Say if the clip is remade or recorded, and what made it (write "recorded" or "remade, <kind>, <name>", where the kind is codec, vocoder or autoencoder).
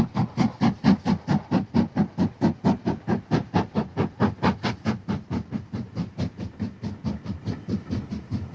recorded